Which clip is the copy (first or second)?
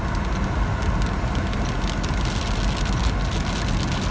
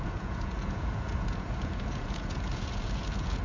second